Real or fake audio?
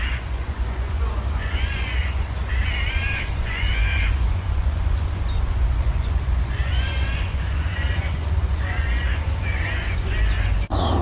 fake